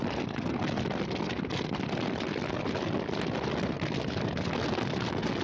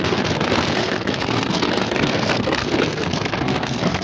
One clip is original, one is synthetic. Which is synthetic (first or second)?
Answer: second